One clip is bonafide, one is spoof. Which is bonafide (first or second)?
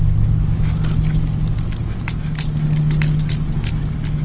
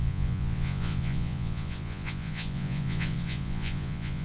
first